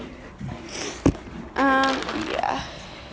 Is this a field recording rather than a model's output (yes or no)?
yes